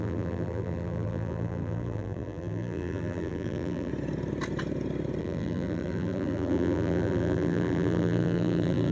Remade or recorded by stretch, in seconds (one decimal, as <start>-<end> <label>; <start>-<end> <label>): 0.0-3.9 remade; 3.9-5.2 recorded; 5.2-8.9 remade